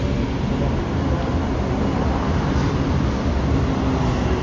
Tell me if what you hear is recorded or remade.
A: recorded